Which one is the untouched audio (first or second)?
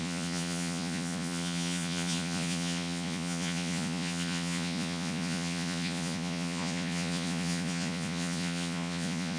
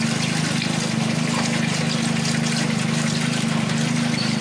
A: second